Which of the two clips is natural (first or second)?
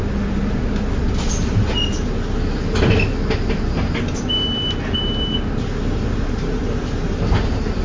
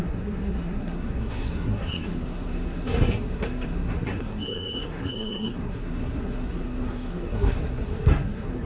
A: first